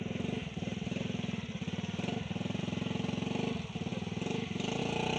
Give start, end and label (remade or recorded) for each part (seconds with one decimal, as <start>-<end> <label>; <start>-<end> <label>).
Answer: 0.0-0.4 recorded; 0.4-2.6 remade; 2.6-3.9 recorded; 3.9-4.8 remade; 4.8-5.2 recorded